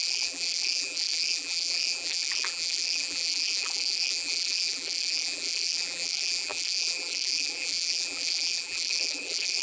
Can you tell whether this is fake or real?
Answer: fake